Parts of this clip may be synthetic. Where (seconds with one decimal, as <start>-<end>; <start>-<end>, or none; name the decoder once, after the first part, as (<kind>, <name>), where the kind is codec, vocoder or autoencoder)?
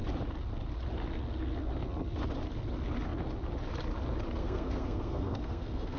4.4-6.0 (codec, SNAC)